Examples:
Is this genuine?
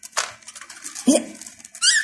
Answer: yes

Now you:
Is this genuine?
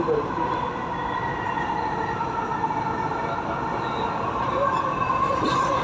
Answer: yes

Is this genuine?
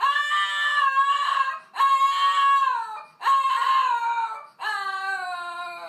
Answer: yes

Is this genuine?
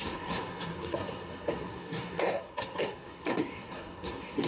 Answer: no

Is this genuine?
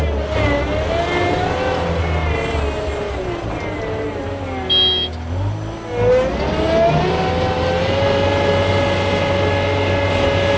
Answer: yes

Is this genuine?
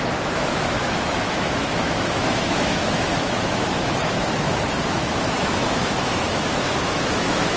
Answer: no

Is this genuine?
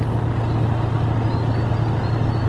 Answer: yes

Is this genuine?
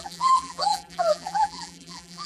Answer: no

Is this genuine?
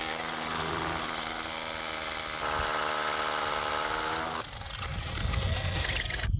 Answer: yes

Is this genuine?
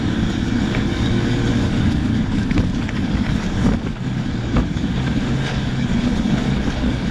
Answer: no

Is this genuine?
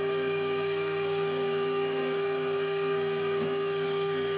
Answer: no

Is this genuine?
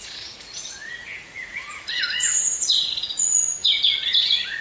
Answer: no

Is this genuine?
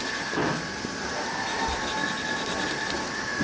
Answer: yes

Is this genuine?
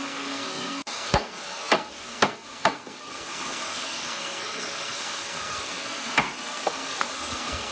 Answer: no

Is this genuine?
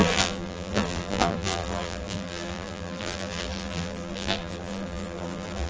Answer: no